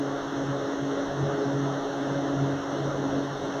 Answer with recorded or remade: recorded